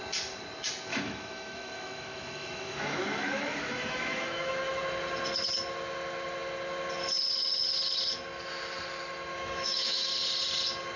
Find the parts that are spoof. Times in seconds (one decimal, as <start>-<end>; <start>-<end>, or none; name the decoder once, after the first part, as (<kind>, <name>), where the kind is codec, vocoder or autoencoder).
0.9-4.8 (autoencoder, DAC-VAE); 9.3-10.1